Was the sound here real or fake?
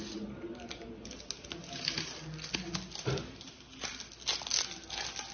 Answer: real